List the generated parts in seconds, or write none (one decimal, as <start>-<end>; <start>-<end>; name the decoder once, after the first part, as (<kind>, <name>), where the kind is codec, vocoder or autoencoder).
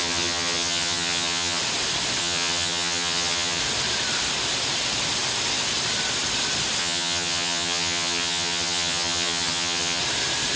0.0-1.6 (vocoder, HiFi-GAN); 2.2-3.6; 6.8-10.0